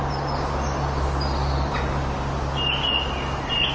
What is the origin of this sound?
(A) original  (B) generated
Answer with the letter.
A